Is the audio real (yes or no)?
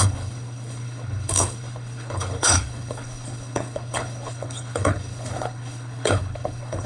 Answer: no